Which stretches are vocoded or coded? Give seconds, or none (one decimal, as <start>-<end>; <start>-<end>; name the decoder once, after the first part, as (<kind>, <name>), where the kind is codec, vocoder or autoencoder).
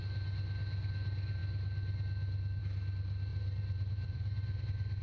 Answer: 3.3-4.6 (vocoder, BigVGAN v2)